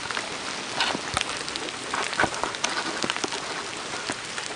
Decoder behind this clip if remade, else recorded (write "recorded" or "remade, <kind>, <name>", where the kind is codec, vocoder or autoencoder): recorded